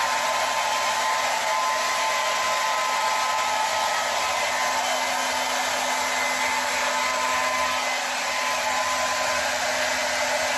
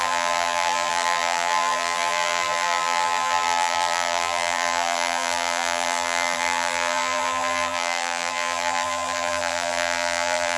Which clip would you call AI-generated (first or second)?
second